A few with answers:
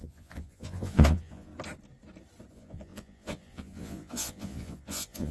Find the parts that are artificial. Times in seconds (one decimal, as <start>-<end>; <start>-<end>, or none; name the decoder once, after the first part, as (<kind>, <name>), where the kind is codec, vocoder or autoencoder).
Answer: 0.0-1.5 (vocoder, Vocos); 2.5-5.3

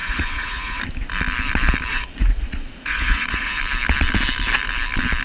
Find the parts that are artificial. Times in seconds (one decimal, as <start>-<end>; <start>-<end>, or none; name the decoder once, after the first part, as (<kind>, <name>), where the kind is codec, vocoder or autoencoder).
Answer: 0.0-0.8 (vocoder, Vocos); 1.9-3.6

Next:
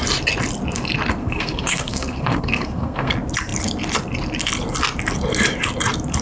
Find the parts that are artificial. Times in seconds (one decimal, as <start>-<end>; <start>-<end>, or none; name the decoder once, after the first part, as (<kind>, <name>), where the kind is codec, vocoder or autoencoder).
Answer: 1.2-3.1 (codec, SNAC)

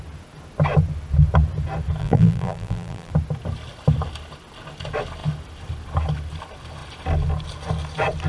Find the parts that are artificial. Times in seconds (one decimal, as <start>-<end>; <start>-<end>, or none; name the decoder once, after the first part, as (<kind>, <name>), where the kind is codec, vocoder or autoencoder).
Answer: 2.0-3.1 (vocoder, BigVGAN v2)

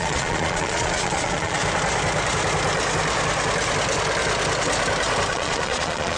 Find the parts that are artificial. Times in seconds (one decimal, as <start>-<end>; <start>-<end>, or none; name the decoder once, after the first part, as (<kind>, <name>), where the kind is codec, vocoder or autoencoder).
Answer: 0.0-1.6 (vocoder, Vocos); 5.3-6.2

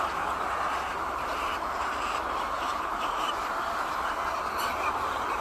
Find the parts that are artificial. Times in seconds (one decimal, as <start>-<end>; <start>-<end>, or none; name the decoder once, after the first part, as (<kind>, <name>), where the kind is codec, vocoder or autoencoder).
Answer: 0.9-4.1 (vocoder, BigVGAN v2)